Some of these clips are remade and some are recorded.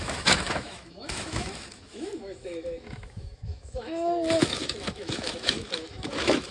remade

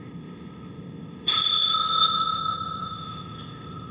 remade